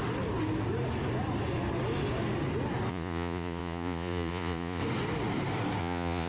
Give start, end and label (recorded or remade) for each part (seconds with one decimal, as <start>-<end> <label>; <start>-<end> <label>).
0.0-2.9 recorded; 2.9-4.8 remade; 4.8-5.8 recorded; 5.8-6.3 remade